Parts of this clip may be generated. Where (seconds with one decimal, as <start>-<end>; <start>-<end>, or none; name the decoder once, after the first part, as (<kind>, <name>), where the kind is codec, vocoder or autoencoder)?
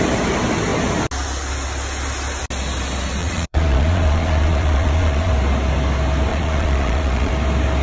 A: 3.2-5.3 (vocoder, Vocos); 6.3-7.3